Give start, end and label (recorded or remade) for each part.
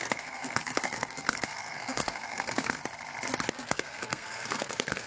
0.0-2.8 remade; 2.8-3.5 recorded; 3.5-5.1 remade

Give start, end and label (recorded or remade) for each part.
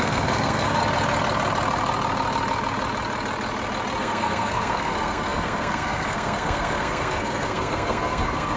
0.0-0.8 remade; 0.8-4.0 recorded; 4.0-8.6 remade